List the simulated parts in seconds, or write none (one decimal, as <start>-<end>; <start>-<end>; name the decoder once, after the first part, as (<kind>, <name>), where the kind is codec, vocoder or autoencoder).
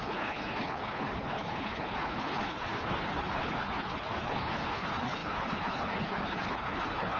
0.0-7.2 (codec, HILCodec)